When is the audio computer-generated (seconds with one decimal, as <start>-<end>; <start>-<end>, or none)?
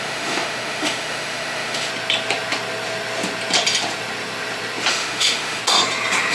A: 0.0-1.9; 4.9-5.6